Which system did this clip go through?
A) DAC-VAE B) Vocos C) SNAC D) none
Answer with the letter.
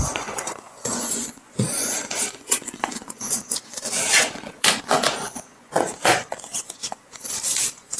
B